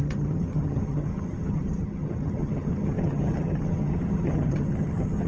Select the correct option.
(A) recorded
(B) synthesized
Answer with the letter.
B